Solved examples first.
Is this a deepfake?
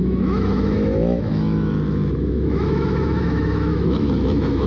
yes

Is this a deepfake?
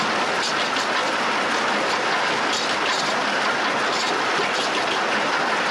no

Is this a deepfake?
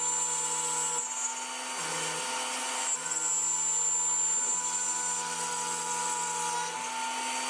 no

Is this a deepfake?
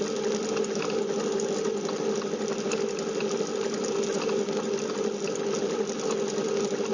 no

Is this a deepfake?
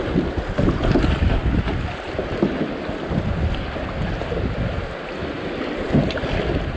no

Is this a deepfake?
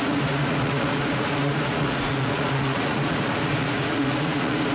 yes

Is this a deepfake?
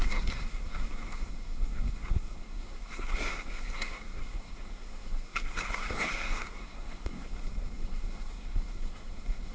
yes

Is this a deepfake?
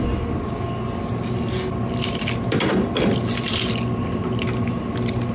no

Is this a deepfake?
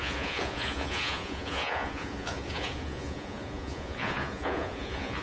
yes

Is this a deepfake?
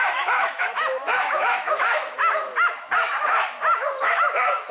yes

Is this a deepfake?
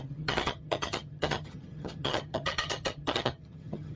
yes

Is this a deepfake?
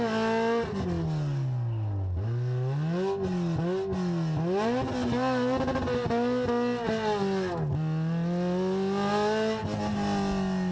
no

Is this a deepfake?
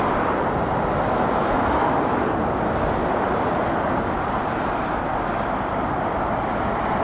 no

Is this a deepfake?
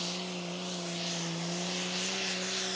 no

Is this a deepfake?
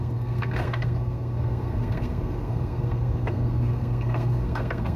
yes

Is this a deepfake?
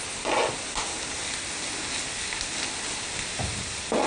no